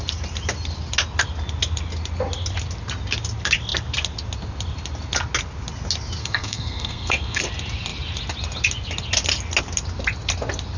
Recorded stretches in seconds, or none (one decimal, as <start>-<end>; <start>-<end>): 0.0-6.2; 7.4-10.8